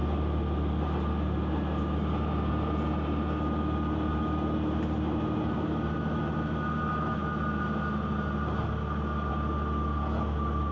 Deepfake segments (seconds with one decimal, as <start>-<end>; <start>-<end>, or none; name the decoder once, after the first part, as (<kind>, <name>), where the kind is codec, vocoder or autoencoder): none